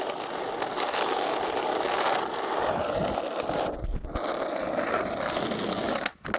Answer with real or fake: real